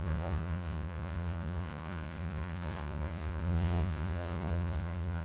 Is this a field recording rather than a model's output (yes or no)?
no